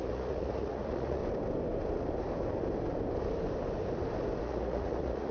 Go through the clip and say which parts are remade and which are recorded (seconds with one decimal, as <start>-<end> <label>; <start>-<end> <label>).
0.0-1.2 remade; 1.2-4.4 recorded; 4.4-5.3 remade